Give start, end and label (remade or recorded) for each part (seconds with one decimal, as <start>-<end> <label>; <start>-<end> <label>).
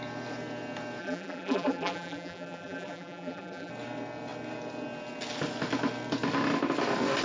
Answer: 0.0-1.0 recorded; 1.0-3.7 remade; 3.7-7.2 recorded